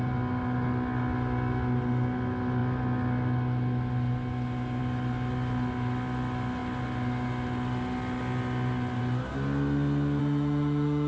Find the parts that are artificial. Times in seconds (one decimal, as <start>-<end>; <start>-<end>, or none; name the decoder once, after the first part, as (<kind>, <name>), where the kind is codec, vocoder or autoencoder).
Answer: 10.2-11.1 (autoencoder, DAC-VAE)